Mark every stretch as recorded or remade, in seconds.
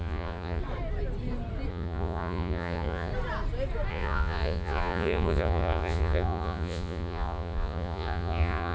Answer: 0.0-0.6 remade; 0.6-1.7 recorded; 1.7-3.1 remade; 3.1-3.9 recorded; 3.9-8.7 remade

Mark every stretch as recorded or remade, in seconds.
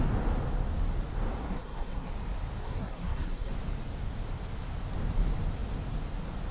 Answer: 0.0-1.4 recorded; 1.4-2.1 remade; 2.1-2.6 recorded; 2.6-3.5 remade; 3.5-6.5 recorded